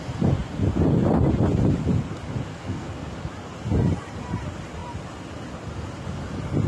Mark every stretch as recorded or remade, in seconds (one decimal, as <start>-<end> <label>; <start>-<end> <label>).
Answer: 0.0-2.5 recorded; 2.5-3.1 remade; 3.1-6.7 recorded